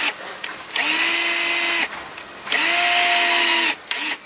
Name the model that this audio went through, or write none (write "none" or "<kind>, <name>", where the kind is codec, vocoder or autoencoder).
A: none